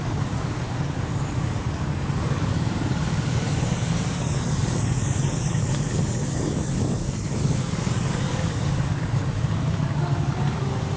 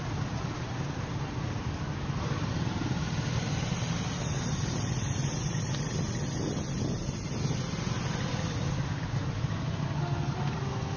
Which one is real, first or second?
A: second